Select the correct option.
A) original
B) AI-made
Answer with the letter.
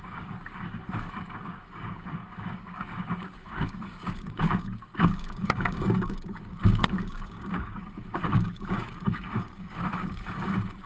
B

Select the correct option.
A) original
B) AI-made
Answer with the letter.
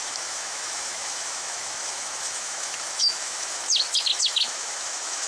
B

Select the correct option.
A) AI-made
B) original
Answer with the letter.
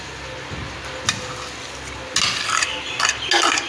B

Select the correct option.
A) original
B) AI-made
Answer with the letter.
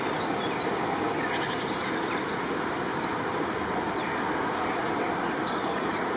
A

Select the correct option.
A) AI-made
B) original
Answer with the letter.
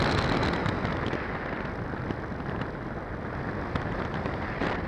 B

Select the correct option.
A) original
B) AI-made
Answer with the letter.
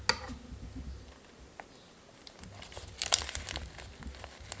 A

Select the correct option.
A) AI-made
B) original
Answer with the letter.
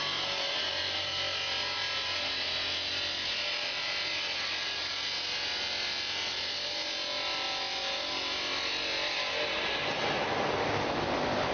B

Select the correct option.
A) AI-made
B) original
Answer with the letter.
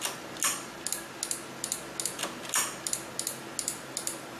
B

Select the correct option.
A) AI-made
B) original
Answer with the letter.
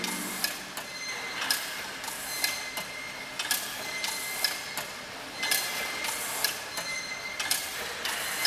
B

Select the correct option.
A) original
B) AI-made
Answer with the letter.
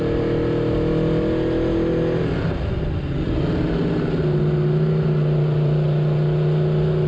A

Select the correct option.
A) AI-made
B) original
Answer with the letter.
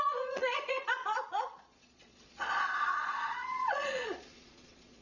A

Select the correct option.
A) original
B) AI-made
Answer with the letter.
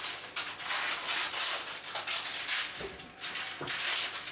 A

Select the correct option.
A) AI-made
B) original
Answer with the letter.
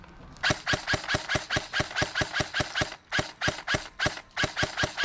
B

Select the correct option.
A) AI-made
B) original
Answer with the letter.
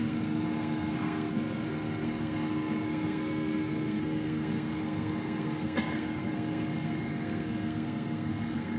A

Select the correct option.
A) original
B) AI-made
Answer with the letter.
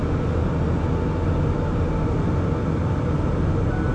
A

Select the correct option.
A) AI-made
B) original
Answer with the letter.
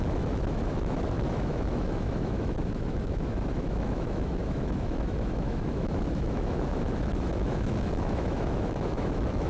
A